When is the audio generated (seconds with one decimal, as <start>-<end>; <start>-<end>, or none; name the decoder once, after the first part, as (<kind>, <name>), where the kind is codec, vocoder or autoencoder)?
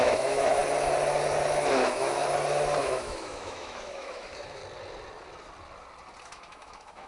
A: 0.0-0.6 (autoencoder, DAC-VAE); 1.7-2.2; 2.8-4.6; 6.2-7.1